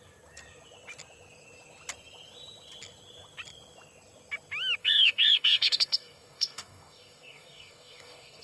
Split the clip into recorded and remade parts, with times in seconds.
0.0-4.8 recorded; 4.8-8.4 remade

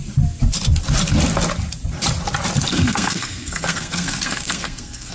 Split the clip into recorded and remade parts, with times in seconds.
0.0-2.7 recorded; 2.7-5.1 remade